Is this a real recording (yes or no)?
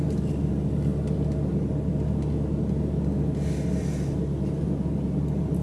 yes